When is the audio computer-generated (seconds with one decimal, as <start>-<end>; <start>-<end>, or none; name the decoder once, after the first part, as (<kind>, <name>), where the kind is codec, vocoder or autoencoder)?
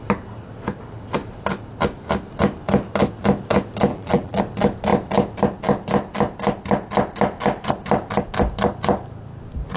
3.9-4.4 (vocoder, BigVGAN v2)